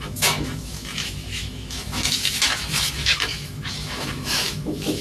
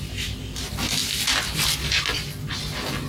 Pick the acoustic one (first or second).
second